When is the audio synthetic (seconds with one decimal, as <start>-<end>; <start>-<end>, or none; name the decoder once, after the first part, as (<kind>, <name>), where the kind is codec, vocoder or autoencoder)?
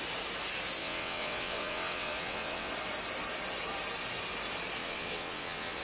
0.8-2.7 (vocoder, WaveNeXt); 4.8-5.8